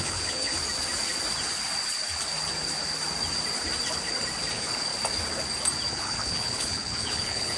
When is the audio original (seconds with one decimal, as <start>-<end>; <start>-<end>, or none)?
0.5-4.5; 4.9-5.9